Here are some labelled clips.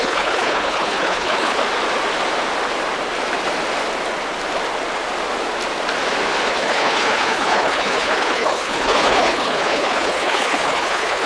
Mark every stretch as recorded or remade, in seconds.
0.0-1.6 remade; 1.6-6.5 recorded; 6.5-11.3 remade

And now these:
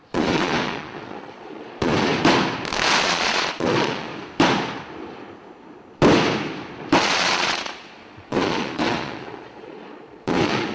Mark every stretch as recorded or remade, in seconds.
0.0-2.1 remade; 2.1-3.0 recorded; 3.0-4.1 remade; 4.1-7.0 recorded; 7.0-10.7 remade